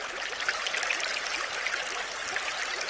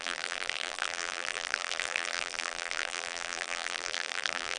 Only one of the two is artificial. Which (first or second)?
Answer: second